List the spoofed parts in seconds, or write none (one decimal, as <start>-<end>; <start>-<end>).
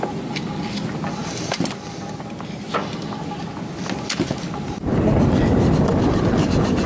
none